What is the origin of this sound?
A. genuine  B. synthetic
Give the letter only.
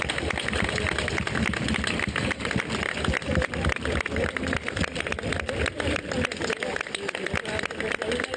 B